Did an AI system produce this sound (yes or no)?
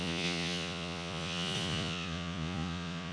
yes